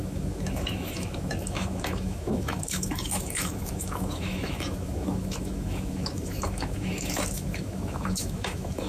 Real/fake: fake